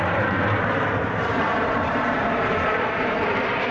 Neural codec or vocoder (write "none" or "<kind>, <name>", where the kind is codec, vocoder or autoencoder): vocoder, BigVGAN v2